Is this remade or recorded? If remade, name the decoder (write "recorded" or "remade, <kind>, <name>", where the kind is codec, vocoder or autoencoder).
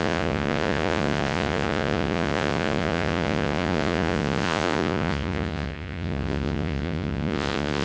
remade, vocoder, Vocos